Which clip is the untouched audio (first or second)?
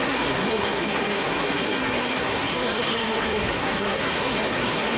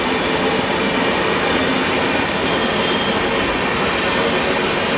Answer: second